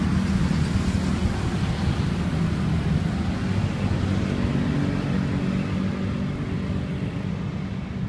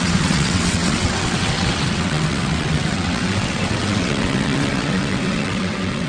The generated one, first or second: second